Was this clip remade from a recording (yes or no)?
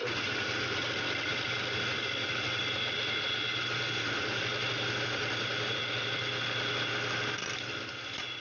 yes